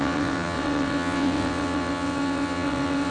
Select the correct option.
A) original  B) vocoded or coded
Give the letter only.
B